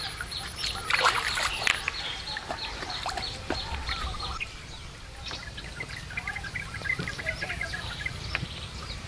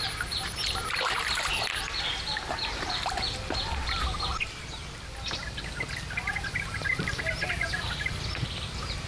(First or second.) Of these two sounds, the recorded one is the second